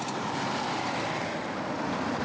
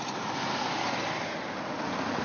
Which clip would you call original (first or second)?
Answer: second